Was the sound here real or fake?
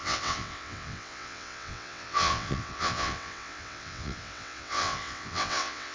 fake